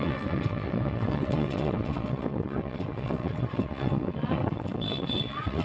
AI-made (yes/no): yes